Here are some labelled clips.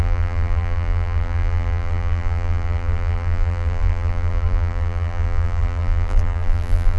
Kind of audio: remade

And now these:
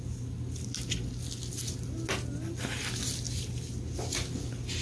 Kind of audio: recorded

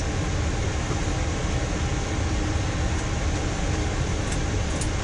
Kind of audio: recorded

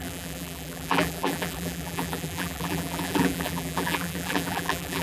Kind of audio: remade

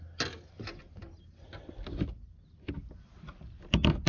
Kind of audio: recorded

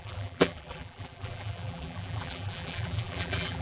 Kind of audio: remade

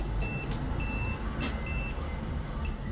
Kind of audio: recorded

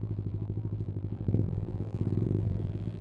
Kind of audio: remade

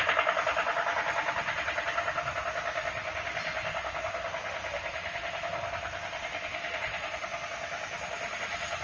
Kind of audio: recorded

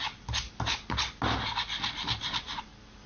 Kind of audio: recorded